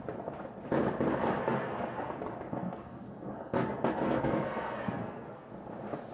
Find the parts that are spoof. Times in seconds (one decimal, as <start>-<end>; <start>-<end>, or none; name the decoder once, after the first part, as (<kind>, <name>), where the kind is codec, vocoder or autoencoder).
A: 1.4-2.1 (codec, SNAC); 2.5-5.5

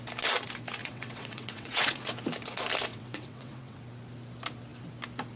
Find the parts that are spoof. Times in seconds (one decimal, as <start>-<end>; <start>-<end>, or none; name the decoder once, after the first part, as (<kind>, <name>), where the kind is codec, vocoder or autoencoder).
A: 0.8-2.1 (vocoder, WaveNeXt); 2.9-3.8

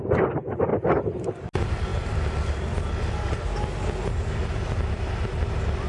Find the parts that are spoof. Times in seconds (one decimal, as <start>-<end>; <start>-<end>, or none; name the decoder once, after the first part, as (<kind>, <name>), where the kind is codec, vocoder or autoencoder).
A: none

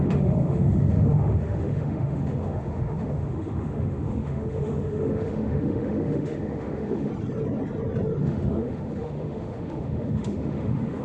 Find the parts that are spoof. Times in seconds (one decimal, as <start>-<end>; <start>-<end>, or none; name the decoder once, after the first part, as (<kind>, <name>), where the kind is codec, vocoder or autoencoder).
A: 0.0-7.1 (autoencoder, DAC-VAE); 8.2-11.0